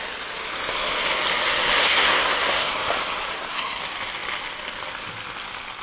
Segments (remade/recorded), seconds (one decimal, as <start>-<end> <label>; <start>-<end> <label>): 0.0-1.8 recorded; 1.8-2.7 remade; 2.7-3.3 recorded; 3.3-3.8 remade; 3.8-5.8 recorded